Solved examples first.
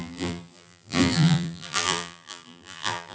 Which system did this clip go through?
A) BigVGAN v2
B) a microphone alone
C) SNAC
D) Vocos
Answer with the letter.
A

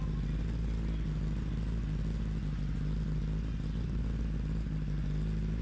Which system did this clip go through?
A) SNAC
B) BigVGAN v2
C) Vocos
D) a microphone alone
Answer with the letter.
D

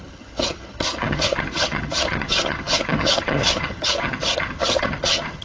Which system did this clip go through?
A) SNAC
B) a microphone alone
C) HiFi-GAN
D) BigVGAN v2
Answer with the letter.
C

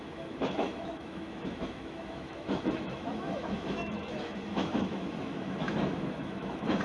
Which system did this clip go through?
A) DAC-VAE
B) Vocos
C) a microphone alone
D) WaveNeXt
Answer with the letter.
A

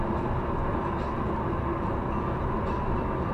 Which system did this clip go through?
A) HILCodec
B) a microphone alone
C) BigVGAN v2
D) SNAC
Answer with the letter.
B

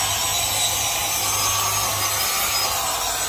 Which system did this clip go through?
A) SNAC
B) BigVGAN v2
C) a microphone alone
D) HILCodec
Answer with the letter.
C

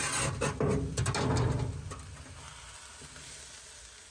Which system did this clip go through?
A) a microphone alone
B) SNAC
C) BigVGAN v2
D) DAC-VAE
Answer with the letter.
A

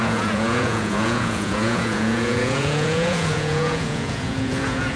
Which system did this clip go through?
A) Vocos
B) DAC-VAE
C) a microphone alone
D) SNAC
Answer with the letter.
A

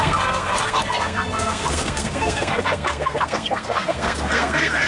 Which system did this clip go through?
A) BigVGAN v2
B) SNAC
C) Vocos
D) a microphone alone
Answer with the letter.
B